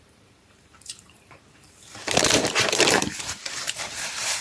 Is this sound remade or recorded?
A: remade